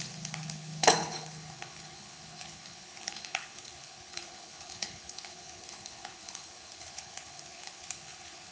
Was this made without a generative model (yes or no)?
no